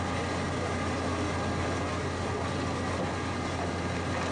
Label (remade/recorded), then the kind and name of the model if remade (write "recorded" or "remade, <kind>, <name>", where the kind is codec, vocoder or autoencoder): recorded